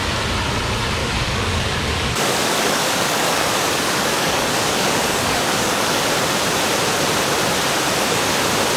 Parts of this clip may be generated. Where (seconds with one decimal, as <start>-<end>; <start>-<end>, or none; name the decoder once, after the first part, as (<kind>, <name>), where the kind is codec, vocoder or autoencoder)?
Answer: 1.0-6.0 (codec, DAC)